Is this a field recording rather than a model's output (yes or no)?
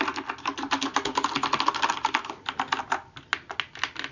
yes